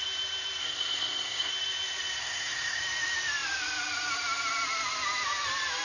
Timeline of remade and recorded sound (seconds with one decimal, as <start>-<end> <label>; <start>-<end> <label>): 0.0-0.6 recorded; 0.6-1.5 remade; 1.5-2.2 recorded; 2.2-2.8 remade; 2.8-5.8 recorded